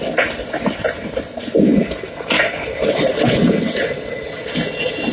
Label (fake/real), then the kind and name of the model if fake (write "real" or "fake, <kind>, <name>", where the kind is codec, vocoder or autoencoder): real